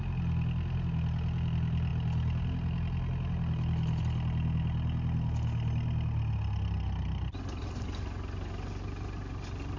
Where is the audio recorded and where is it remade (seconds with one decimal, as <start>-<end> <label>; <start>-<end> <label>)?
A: 0.0-9.8 recorded